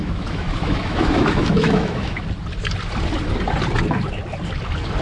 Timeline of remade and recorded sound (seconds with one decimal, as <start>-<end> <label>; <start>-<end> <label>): 0.0-2.2 remade; 2.2-5.0 recorded